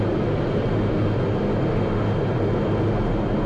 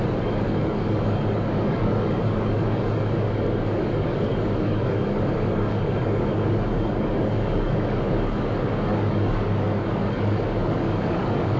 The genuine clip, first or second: first